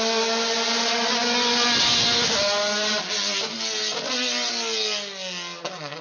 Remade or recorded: recorded